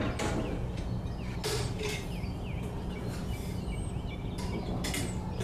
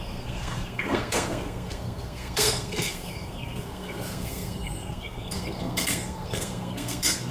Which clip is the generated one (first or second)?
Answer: second